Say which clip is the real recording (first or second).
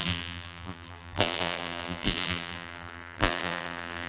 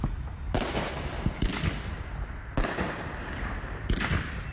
second